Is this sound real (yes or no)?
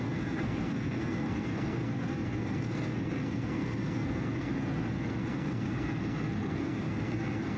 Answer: no